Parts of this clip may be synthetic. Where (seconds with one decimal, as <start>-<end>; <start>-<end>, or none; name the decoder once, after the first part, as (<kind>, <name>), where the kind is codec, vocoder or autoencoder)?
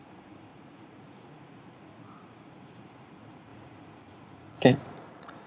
0.0-5.5 (vocoder, Vocos)